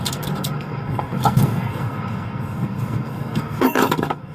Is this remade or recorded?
remade